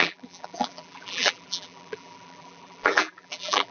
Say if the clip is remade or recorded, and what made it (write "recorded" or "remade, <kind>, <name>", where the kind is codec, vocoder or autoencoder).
remade, vocoder, BigVGAN v2